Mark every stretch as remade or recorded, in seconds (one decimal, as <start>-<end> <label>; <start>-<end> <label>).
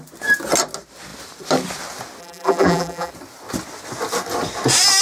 0.0-2.2 recorded; 2.2-3.1 remade; 3.1-5.0 recorded